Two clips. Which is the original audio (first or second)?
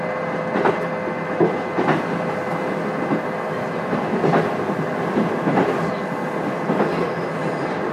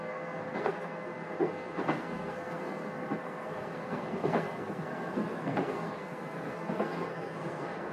first